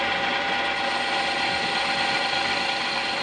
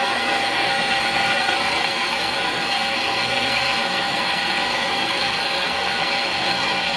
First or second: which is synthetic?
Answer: second